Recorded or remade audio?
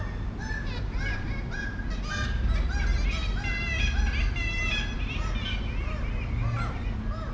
recorded